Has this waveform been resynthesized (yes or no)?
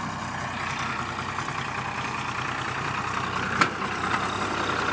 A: no